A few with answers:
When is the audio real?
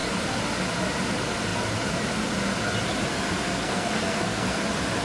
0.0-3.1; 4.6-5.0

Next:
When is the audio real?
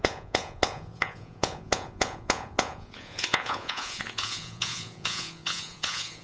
none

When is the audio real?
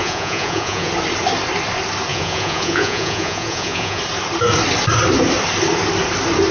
0.9-2.1; 4.0-6.5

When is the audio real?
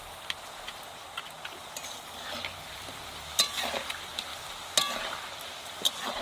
0.0-6.2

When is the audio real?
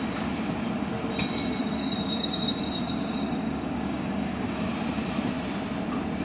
0.0-1.6; 4.7-6.2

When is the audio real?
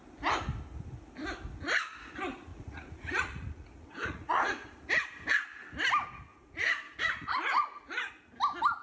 0.0-2.5; 4.9-6.3; 8.1-8.8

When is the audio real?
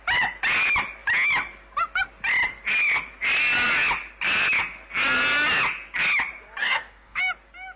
0.0-6.6; 7.2-7.8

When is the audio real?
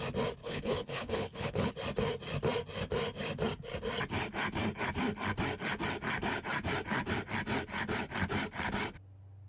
0.0-0.4; 1.7-9.5